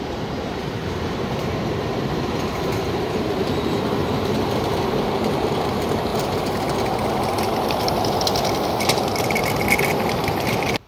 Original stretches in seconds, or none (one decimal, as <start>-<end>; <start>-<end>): 6.1-10.9